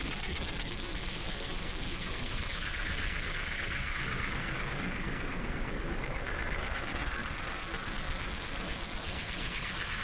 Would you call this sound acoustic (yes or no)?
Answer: no